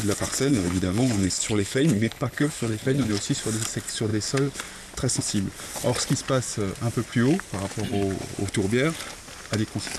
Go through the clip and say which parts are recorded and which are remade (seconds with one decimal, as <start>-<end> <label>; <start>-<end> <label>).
0.0-0.5 recorded; 0.5-3.1 remade; 3.1-10.0 recorded